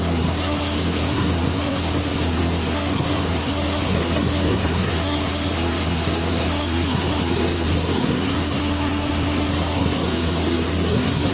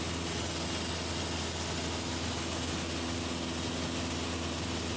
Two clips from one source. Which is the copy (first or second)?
first